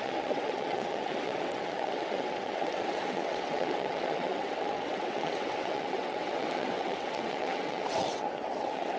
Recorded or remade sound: remade